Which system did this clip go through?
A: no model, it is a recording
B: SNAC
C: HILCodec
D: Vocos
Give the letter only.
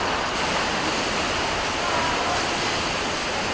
A